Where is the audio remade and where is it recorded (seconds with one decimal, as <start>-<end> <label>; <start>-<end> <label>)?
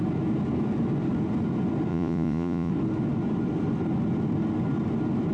0.0-1.9 recorded; 1.9-2.7 remade; 2.7-5.3 recorded